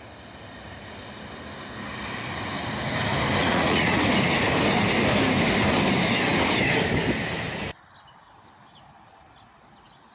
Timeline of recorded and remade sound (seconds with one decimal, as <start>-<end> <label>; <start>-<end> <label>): 0.0-3.4 recorded; 3.4-4.0 remade; 4.0-10.1 recorded